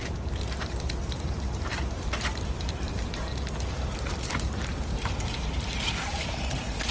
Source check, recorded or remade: remade